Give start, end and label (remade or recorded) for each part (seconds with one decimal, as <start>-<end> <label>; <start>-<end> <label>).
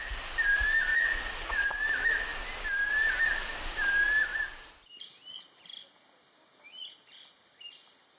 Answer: 0.0-0.9 recorded; 0.9-1.8 remade; 1.8-8.2 recorded